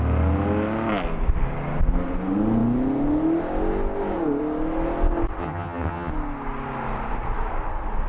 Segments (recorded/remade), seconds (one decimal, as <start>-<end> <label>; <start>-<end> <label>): 0.0-5.4 recorded; 5.4-6.1 remade; 6.1-8.1 recorded